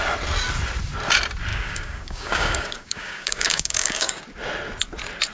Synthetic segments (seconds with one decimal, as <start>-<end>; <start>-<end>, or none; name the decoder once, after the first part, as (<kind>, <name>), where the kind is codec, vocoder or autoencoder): 1.5-4.2 (codec, DAC)